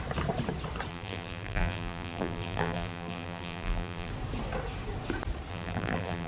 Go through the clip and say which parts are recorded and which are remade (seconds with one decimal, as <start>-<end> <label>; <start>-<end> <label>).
0.0-0.9 recorded; 0.9-4.1 remade; 4.1-5.5 recorded; 5.5-6.3 remade